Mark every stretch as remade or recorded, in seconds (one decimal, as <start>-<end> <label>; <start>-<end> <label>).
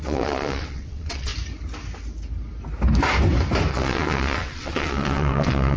0.0-1.3 remade; 1.3-3.7 recorded; 3.7-5.8 remade